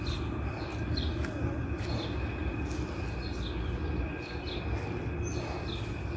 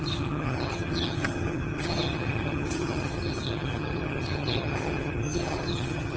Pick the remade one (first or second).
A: second